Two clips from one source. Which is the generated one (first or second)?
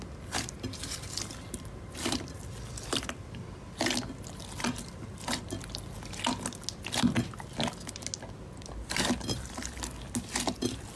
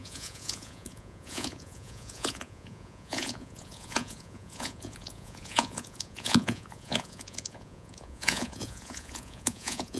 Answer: second